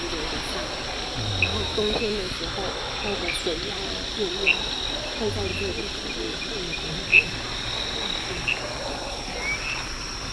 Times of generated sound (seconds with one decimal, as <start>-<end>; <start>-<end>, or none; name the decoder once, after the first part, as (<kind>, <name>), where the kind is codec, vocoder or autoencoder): 1.5-2.3 (autoencoder, DAC-VAE)